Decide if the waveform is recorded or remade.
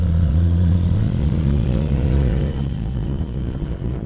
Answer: remade